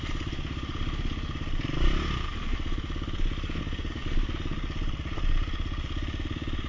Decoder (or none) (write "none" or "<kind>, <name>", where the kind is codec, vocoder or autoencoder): none